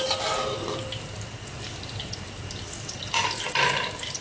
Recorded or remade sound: recorded